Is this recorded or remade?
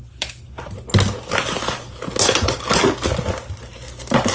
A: recorded